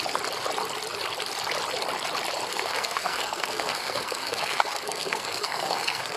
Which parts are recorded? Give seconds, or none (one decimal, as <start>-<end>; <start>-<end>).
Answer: 0.0-2.5